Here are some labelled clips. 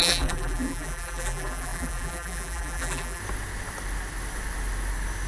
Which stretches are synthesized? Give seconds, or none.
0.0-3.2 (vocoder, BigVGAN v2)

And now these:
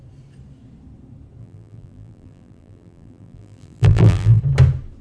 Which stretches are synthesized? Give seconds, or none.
1.4-4.4 (vocoder, BigVGAN v2)

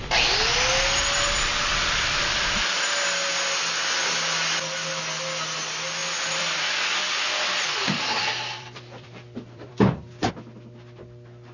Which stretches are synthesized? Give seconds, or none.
6.0-10.3 (vocoder, BigVGAN v2)

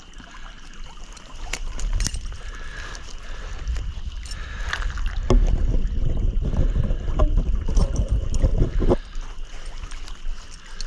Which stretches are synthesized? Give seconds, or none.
0.0-2.7 (vocoder, BigVGAN v2); 7.2-8.5

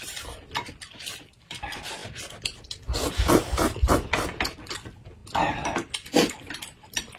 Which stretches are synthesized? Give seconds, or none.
0.0-2.0 (vocoder, BigVGAN v2); 3.1-5.2; 6.3-7.2

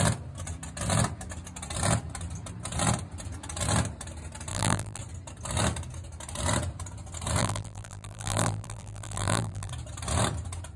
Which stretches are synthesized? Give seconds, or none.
4.5-5.0 (vocoder, BigVGAN v2); 7.4-9.7